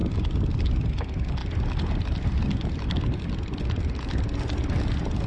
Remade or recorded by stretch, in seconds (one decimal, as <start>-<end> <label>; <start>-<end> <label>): 0.0-5.3 recorded